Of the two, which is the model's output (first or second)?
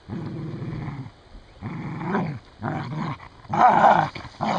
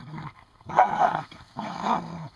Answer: second